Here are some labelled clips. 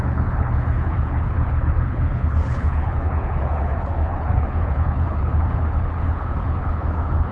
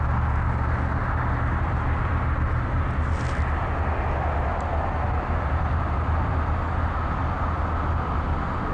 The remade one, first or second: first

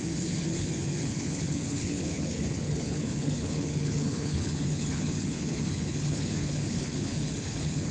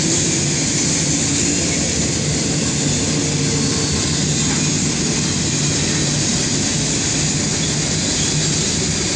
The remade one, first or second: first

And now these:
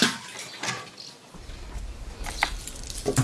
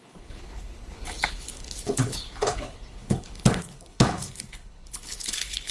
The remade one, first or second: second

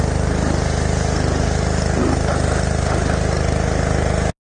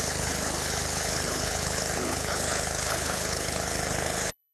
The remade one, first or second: second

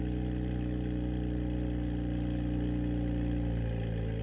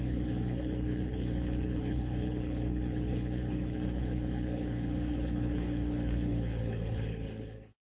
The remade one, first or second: second